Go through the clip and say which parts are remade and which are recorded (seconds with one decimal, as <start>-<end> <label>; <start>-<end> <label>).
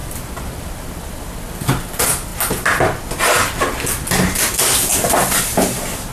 0.0-6.1 recorded